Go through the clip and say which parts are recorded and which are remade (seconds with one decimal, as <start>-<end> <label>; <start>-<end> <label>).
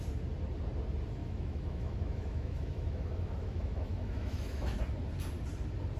0.0-1.2 recorded; 1.2-4.8 remade; 4.8-6.0 recorded